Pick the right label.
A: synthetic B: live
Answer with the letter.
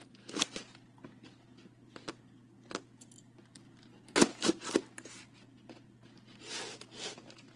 B